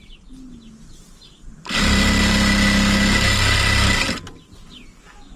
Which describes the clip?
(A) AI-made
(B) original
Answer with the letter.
B